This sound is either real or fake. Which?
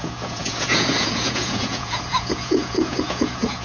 fake